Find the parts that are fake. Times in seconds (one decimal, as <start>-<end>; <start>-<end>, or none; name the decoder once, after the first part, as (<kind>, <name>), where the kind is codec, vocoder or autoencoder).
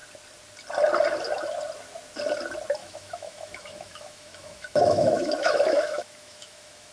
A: 2.8-6.9 (autoencoder, DAC-VAE)